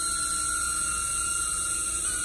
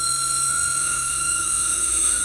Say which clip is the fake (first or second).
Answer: second